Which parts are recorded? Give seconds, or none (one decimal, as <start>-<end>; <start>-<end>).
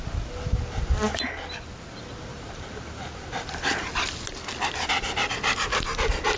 0.0-2.3; 3.3-5.7